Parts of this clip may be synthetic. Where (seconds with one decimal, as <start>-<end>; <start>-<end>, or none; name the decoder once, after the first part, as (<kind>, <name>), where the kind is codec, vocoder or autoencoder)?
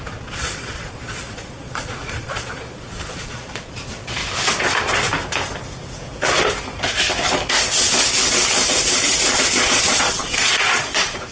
0.0-4.2 (vocoder, Vocos); 9.4-11.3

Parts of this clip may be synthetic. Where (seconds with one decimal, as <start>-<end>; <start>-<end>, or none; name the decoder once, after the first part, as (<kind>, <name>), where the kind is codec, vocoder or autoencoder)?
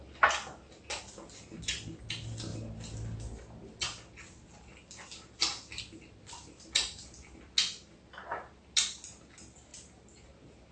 none